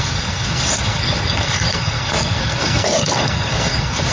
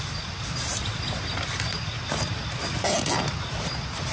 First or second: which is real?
second